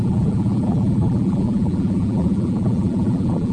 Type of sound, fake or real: fake